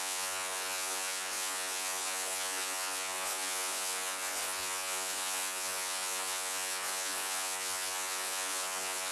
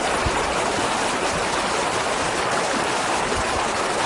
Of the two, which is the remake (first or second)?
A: first